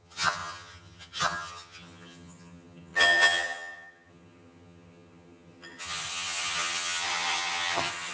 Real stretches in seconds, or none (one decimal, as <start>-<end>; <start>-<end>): none